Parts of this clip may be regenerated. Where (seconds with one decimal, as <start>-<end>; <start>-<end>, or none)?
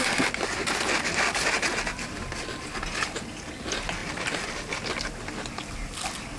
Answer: none